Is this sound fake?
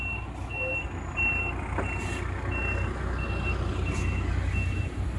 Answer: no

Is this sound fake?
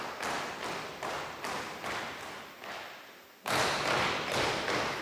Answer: no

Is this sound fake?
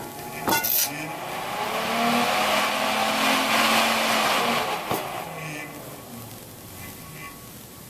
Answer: no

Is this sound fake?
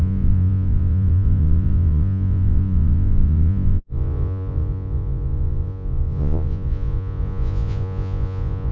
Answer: yes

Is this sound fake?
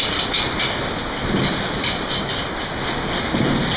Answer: no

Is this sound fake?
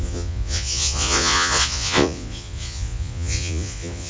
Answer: yes